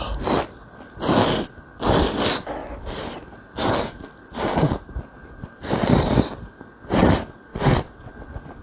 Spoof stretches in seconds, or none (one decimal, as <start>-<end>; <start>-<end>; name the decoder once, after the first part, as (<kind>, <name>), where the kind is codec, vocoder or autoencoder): 7.5-8.1 (vocoder, WaveNeXt)